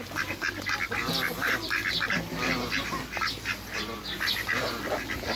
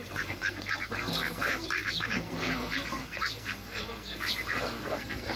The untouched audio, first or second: first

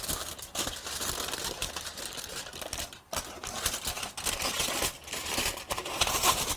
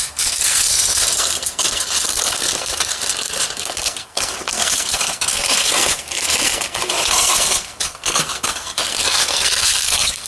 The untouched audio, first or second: first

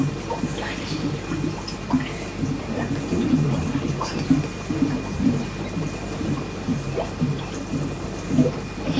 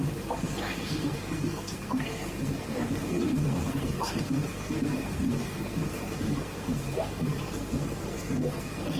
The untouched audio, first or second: first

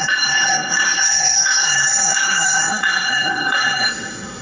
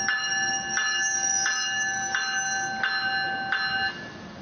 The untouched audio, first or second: second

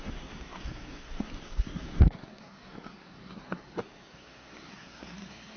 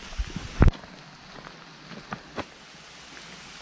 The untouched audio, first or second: second